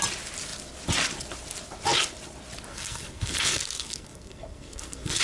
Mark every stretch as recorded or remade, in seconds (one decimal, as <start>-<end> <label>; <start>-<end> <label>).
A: 0.0-2.7 recorded; 2.7-5.2 remade